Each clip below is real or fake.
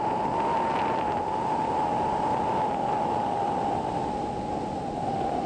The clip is real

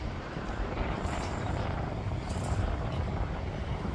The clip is fake